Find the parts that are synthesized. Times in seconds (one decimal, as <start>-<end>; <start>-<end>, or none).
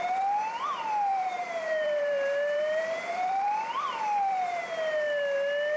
1.1-4.6